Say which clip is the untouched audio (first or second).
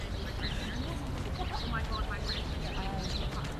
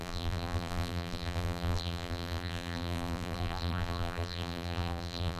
first